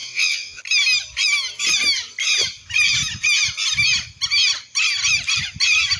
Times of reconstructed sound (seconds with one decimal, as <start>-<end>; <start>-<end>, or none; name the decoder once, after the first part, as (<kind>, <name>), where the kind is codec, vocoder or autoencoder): 0.0-0.6 (vocoder, WaveNeXt)